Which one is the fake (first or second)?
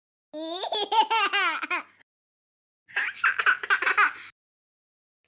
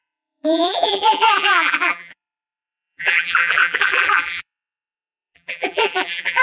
second